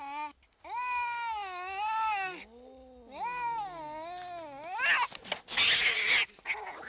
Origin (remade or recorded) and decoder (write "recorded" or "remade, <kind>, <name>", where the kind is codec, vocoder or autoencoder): recorded